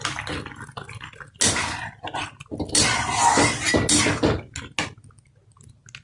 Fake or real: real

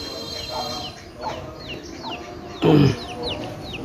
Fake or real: real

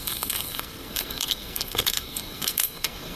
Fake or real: fake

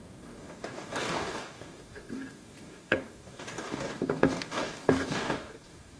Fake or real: fake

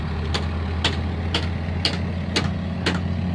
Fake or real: real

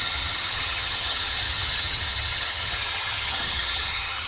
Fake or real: fake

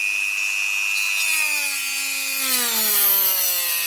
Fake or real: real